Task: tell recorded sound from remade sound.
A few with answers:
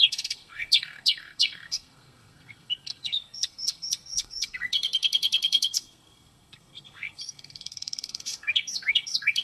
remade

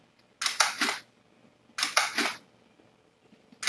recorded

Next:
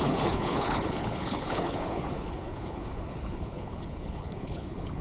remade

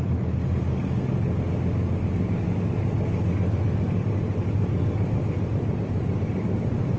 recorded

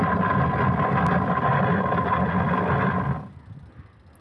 recorded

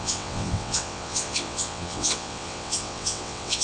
remade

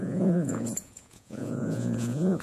remade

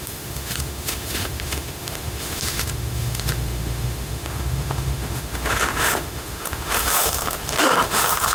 remade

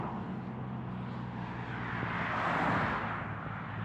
recorded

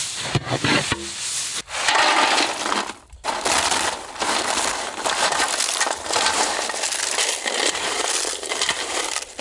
recorded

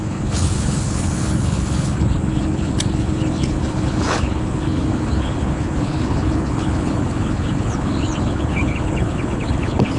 remade